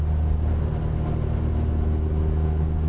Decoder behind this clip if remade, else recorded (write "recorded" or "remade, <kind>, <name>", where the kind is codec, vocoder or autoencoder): recorded